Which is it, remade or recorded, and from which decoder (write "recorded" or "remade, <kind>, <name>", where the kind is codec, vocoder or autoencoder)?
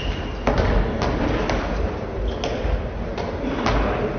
recorded